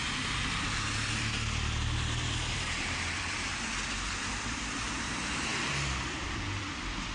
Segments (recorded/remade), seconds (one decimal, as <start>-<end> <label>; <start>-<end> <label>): 0.0-5.5 remade; 5.5-6.1 recorded; 6.1-7.1 remade